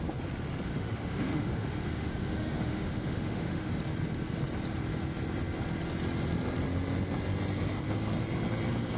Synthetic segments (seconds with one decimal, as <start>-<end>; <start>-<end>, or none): 0.7-3.7